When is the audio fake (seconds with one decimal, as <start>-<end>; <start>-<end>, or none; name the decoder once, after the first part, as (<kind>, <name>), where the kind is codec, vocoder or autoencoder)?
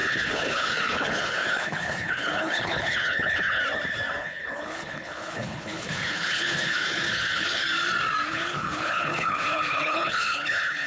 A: 0.0-3.6 (codec, HILCodec); 4.2-7.6; 8.3-10.9